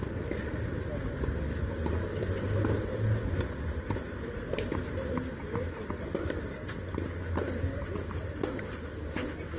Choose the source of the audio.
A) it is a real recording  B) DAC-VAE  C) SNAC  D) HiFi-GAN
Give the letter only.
A